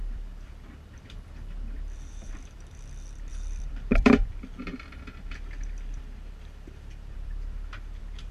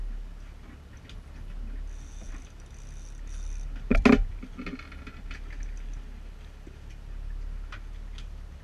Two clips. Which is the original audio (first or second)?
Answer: second